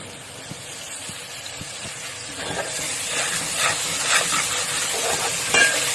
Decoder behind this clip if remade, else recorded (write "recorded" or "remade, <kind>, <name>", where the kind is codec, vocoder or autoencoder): remade, vocoder, BigVGAN v2